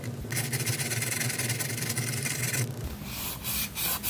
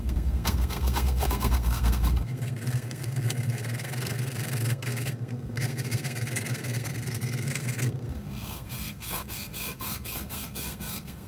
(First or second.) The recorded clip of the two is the first